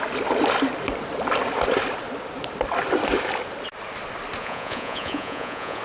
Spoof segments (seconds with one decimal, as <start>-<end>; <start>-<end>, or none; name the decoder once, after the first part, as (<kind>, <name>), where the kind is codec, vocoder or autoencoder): 4.4-5.8 (vocoder, Vocos)